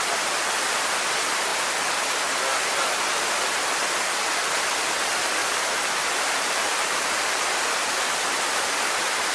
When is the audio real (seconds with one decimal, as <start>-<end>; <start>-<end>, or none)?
0.0-5.4